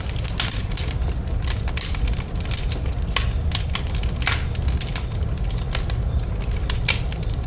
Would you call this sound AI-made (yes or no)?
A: no